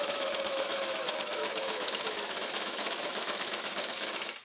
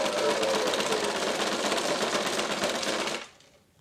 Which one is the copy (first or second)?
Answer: first